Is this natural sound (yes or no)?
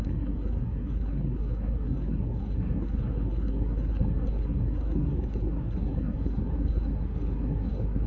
no